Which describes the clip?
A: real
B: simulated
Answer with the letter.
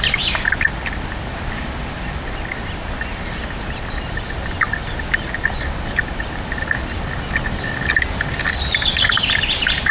A